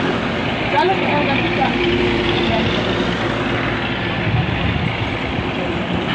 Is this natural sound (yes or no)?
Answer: yes